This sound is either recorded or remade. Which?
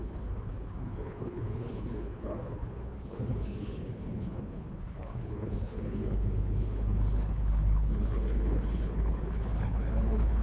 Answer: remade